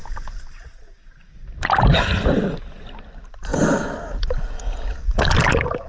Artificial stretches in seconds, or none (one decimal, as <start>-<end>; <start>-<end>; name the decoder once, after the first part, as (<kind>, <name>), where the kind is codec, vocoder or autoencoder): none